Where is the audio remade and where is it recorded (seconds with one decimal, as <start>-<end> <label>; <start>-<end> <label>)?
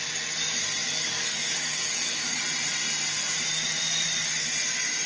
0.0-0.8 recorded; 0.8-2.4 remade; 2.4-5.1 recorded